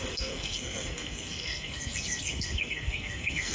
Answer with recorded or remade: remade